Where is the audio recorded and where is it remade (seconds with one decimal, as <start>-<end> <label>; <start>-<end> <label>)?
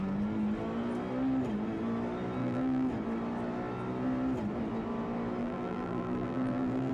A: 0.0-2.4 recorded; 2.4-2.9 remade; 2.9-5.4 recorded; 5.4-6.9 remade